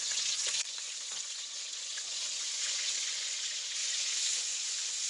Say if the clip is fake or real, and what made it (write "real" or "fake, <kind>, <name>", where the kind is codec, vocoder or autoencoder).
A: fake, vocoder, Vocos